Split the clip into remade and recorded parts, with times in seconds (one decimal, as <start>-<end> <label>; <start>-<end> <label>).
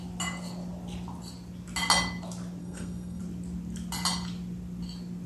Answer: 0.0-2.6 recorded; 2.6-3.2 remade; 3.2-5.3 recorded